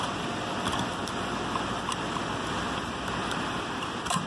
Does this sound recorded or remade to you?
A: recorded